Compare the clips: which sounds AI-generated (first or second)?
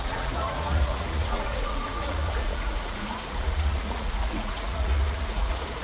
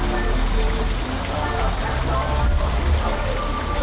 first